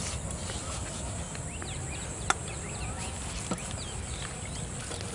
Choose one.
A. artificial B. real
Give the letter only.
B